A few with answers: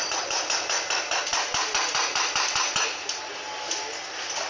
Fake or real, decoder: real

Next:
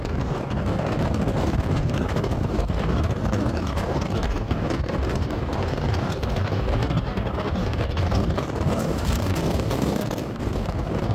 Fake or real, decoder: fake, codec, DAC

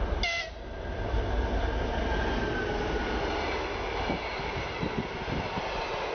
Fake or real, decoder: real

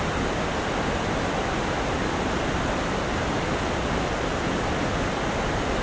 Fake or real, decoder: real